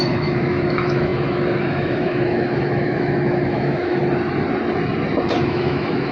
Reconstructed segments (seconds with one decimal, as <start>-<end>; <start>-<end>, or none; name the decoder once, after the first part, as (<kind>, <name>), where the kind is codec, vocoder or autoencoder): 0.0-4.0 (autoencoder, DAC-VAE); 5.5-6.1